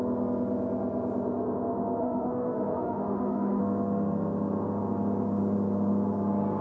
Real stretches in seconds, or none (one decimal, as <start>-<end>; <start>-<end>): 0.0-2.0; 3.6-6.6

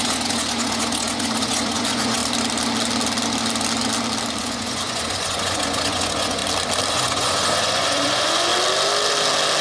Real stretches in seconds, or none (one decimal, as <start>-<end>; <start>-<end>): 2.2-4.4; 6.4-6.9; 8.5-9.6

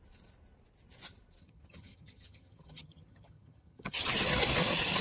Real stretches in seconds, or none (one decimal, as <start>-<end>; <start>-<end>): 0.0-1.4; 4.1-5.0

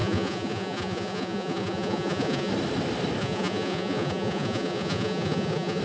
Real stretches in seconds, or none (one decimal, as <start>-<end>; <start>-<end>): 2.5-3.2